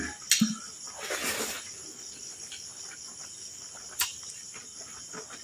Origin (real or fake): real